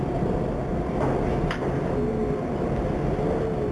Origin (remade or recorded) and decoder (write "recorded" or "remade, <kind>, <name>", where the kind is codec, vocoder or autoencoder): recorded